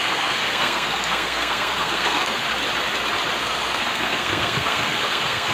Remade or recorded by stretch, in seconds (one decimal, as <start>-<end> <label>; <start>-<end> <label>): 0.0-2.4 remade; 2.4-3.4 recorded; 3.4-5.5 remade